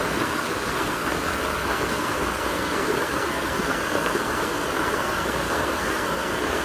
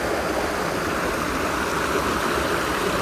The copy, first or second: first